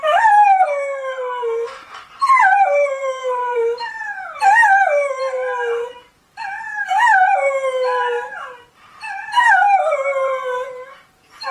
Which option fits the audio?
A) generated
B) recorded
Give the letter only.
A